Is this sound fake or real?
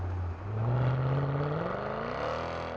real